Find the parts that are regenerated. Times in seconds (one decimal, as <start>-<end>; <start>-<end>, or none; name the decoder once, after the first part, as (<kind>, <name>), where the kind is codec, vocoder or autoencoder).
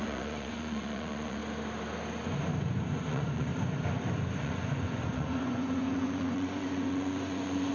0.0-1.4 (vocoder, Vocos); 3.0-3.5; 4.4-7.7